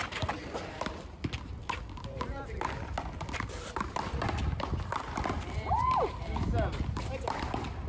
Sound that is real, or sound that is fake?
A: real